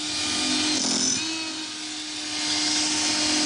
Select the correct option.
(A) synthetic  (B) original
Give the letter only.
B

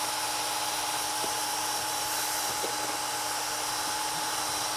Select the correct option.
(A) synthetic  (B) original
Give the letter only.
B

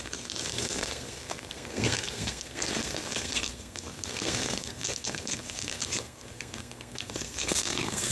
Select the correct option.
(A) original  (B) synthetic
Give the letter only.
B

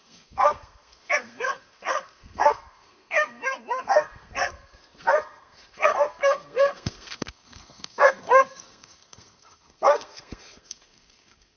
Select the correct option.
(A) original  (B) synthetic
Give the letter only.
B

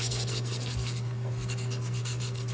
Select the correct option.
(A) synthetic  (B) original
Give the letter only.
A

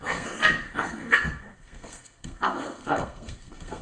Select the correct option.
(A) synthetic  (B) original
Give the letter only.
A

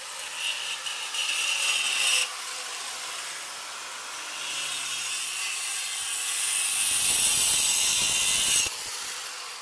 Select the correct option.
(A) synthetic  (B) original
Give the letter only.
B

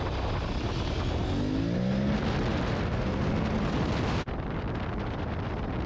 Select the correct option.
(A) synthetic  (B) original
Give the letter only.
B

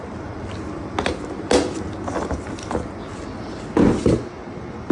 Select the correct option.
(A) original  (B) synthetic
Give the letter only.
A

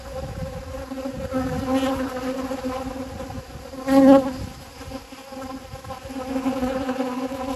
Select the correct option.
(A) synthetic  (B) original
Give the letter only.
B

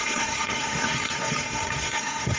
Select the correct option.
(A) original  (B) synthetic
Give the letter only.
B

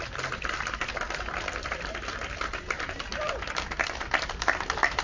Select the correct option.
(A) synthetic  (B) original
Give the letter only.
B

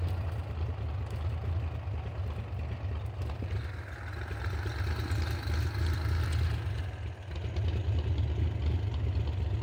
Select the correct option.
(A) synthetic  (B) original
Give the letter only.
B